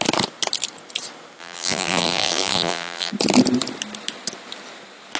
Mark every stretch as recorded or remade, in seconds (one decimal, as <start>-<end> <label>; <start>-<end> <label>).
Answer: 0.0-1.4 recorded; 1.4-3.1 remade; 3.1-5.2 recorded